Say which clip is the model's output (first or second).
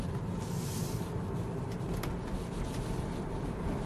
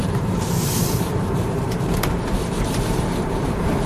second